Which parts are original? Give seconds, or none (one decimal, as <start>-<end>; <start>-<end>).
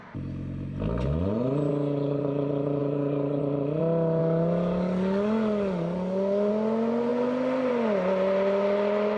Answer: 0.0-1.7; 2.2-2.8; 3.4-4.2; 6.5-9.2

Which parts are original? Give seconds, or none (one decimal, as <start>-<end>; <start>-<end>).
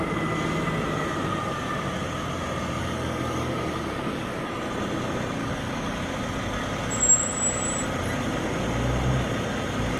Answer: 0.0-2.8; 4.5-5.4; 6.0-10.0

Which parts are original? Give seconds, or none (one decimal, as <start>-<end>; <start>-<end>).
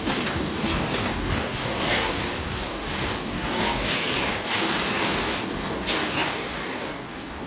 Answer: none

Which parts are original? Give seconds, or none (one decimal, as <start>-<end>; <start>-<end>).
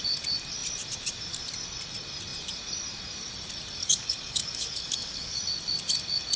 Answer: 0.0-3.8; 5.4-6.4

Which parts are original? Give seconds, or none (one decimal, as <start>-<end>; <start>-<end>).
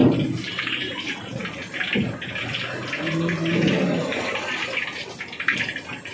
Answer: 0.0-6.1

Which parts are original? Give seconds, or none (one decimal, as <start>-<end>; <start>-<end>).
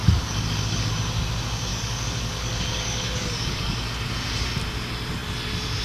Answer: 0.9-1.7; 3.9-5.8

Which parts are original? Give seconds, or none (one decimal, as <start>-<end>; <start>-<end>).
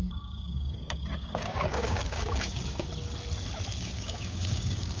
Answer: 2.9-3.8